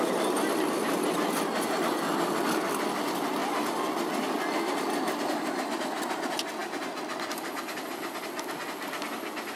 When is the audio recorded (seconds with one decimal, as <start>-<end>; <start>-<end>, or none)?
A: 0.0-9.6